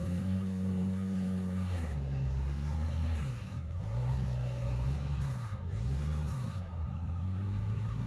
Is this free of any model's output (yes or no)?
no